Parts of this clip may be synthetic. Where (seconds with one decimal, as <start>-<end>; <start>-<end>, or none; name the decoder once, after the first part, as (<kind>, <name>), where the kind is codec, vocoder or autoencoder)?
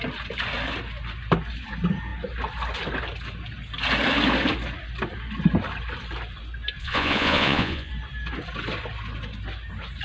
6.8-7.9 (vocoder, Vocos)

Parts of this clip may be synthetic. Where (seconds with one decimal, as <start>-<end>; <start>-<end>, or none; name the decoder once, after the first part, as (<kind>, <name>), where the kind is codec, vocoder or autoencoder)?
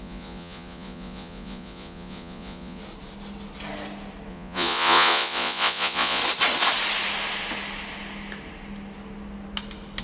0.0-2.8 (vocoder, Vocos); 4.3-6.2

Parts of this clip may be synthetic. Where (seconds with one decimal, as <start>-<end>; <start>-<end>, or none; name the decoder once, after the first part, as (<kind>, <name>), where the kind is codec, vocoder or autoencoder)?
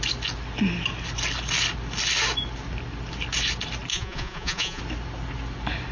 3.9-4.8 (vocoder, Vocos)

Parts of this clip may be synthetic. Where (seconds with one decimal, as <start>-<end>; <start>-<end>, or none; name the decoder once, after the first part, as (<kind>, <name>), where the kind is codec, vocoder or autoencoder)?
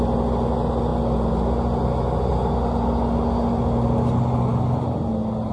none